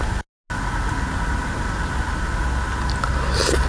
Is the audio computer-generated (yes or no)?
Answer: no